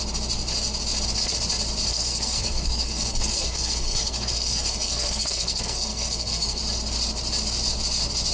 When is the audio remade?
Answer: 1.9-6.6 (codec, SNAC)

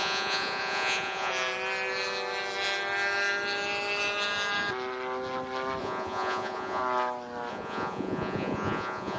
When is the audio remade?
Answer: 0.0-1.3 (vocoder, Vocos); 5.8-6.8; 7.5-9.2

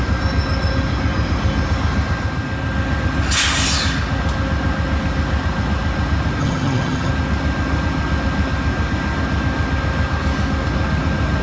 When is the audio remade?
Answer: 6.4-7.1 (vocoder, HiFi-GAN)

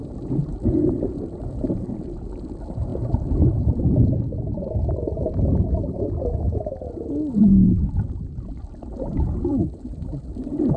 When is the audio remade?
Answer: 1.1-1.7 (vocoder, BigVGAN v2); 7.4-10.2

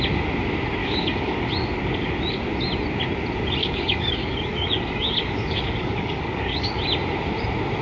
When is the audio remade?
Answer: 0.8-1.5 (codec, DAC); 3.6-6.8

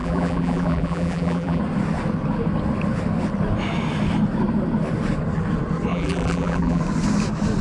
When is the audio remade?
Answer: 0.0-1.6 (vocoder, BigVGAN v2); 5.9-6.8

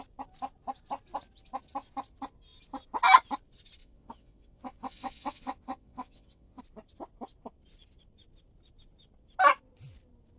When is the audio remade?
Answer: 3.8-6.6 (vocoder, WaveNeXt)

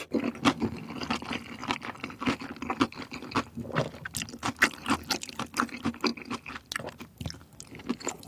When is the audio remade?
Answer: none